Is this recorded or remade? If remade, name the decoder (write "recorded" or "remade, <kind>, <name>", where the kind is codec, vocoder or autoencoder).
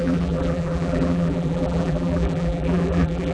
remade, vocoder, BigVGAN v2